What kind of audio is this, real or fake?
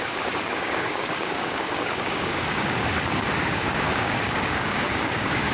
fake